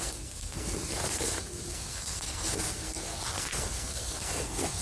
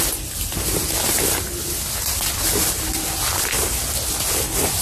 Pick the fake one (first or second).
first